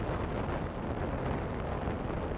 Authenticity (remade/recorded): recorded